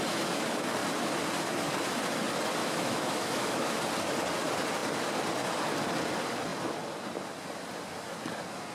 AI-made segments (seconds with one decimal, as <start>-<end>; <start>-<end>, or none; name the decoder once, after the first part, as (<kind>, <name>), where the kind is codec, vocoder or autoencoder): 2.6-3.8 (autoencoder, DAC-VAE)